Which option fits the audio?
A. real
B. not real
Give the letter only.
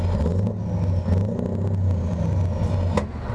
A